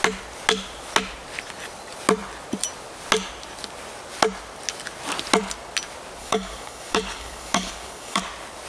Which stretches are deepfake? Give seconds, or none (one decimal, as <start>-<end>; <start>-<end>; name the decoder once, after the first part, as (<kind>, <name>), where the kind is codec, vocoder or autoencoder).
6.2-8.2 (codec, DAC)